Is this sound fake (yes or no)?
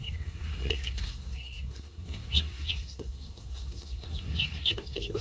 yes